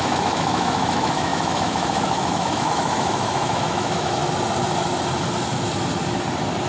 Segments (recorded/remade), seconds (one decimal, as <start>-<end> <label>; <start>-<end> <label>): 0.0-4.2 remade; 4.2-6.7 recorded